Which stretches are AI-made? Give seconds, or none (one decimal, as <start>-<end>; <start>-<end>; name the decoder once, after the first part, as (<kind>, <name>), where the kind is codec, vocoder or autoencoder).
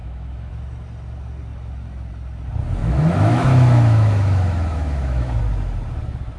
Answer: 0.0-0.5 (autoencoder, DAC-VAE); 2.8-5.4